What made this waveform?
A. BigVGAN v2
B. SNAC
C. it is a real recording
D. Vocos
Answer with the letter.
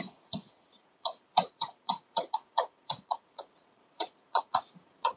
D